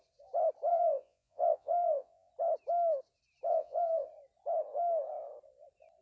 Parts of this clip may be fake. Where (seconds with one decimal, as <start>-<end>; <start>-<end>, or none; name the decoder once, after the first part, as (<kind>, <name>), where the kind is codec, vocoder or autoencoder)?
0.7-2.3 (vocoder, Vocos); 3.5-4.1